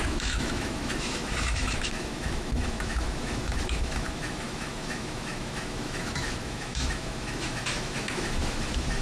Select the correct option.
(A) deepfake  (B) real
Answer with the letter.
A